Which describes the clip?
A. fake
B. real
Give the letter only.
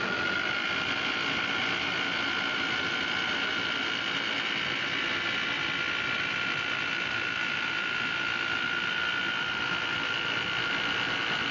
B